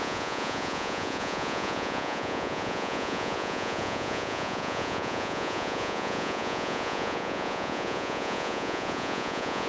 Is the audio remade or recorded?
remade